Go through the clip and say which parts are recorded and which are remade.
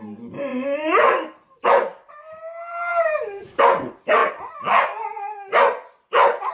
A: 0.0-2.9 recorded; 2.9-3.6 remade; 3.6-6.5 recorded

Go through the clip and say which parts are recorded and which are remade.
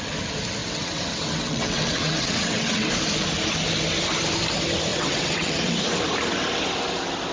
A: 0.0-0.6 recorded; 0.6-2.9 remade; 2.9-4.9 recorded; 4.9-5.7 remade; 5.7-7.3 recorded